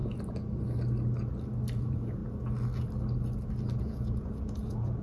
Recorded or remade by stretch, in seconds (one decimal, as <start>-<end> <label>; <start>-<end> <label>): 0.0-1.8 recorded; 1.8-2.2 remade; 2.2-3.8 recorded; 3.8-5.0 remade